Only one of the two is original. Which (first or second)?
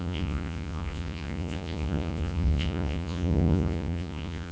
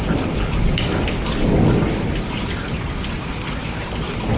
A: second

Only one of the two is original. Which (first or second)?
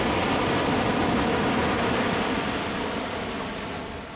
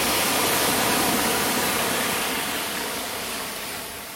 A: first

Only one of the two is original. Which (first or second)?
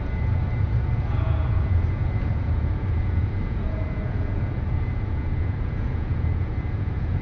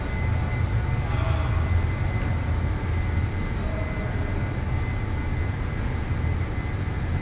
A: second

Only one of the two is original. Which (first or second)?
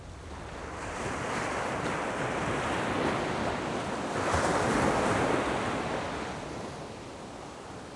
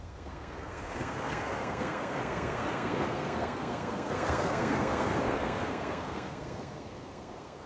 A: first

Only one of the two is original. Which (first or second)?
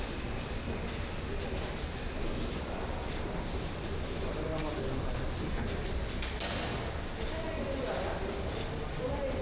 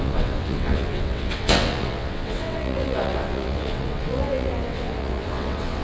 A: first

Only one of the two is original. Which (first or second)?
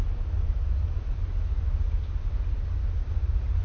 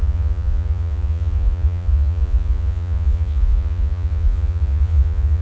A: first